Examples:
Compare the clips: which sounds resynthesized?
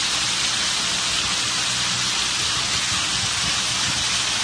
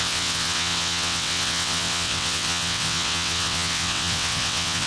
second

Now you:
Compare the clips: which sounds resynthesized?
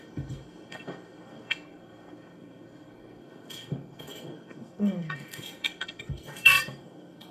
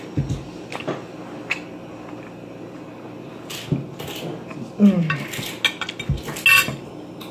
first